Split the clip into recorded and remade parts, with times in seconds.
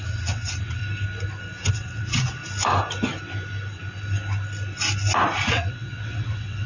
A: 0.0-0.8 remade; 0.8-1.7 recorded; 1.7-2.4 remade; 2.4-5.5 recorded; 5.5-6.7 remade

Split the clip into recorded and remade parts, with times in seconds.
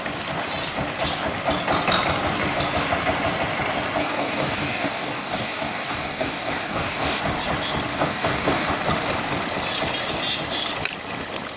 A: 0.0-4.0 recorded; 4.0-7.2 remade; 7.2-7.9 recorded; 7.9-8.7 remade; 8.7-11.6 recorded